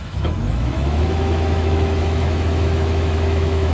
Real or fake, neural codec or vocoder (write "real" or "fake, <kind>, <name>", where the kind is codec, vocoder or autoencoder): fake, autoencoder, DAC-VAE